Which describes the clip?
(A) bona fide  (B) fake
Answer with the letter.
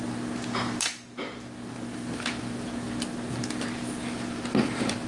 A